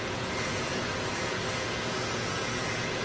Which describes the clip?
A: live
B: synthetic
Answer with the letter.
B